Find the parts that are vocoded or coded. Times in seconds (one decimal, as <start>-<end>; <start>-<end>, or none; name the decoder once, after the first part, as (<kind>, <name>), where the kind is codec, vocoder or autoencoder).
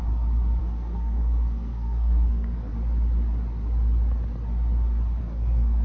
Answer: 0.6-2.7 (codec, SNAC); 5.2-5.8